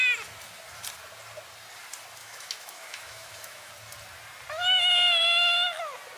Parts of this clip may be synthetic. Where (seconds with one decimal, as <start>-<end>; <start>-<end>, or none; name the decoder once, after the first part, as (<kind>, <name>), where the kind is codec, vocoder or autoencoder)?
2.2-3.7 (autoencoder, DAC-VAE)